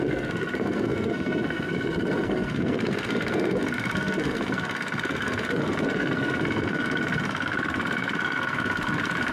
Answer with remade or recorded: remade